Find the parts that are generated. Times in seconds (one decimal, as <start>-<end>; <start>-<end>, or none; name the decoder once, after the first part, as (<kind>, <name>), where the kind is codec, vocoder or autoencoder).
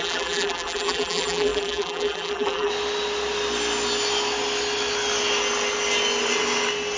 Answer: 0.0-2.7 (vocoder, BigVGAN v2)